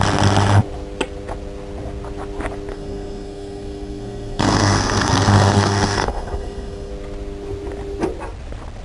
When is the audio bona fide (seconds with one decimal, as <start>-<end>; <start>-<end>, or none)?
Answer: 0.0-2.7; 6.9-8.8

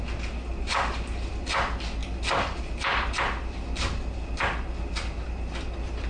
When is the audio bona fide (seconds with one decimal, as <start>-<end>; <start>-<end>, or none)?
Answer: 0.0-6.1

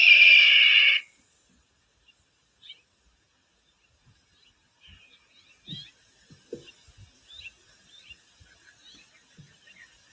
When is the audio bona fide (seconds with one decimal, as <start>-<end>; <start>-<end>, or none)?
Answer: 0.0-10.1

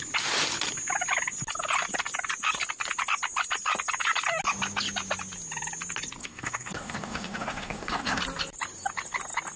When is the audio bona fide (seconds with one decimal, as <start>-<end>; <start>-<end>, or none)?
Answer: 0.0-6.2; 8.2-9.6

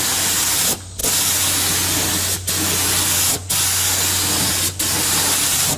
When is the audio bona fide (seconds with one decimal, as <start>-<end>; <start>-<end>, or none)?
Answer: 0.0-5.8

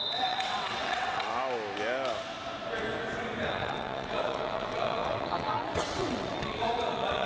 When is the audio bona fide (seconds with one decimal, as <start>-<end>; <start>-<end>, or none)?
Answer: 1.3-3.5

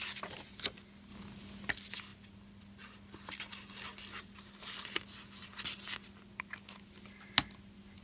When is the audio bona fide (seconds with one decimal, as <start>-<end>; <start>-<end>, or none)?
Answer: 0.0-8.0

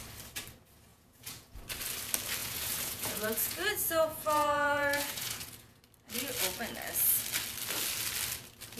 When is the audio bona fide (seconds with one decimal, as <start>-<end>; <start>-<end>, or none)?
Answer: 0.0-0.9; 1.6-2.4; 5.8-8.8